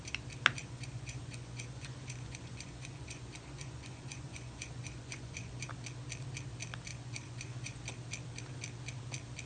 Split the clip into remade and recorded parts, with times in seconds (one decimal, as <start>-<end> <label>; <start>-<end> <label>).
0.0-0.6 recorded; 0.6-5.7 remade; 5.7-6.9 recorded; 6.9-7.8 remade; 7.8-9.5 recorded